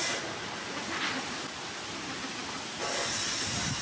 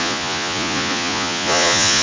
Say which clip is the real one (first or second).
first